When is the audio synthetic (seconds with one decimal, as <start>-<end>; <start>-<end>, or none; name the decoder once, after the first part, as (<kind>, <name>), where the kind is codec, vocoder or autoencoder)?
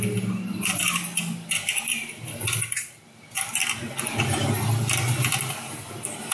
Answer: none